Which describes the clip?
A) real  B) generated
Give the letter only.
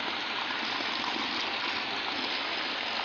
A